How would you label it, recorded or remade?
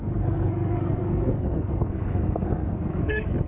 remade